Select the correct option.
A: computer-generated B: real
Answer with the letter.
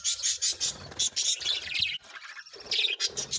B